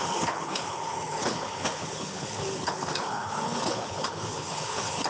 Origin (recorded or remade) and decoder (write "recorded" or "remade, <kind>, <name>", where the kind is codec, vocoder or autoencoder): remade, codec, HILCodec